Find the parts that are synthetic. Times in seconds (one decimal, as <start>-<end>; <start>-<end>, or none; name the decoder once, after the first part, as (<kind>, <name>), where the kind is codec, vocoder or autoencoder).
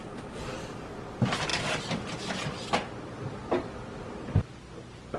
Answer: none